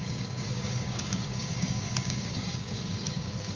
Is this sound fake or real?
fake